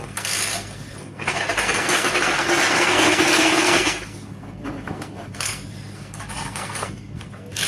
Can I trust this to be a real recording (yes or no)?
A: no